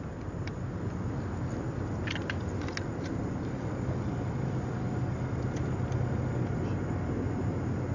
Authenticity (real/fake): real